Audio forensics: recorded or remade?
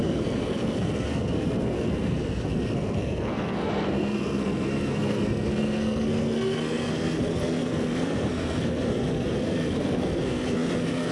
remade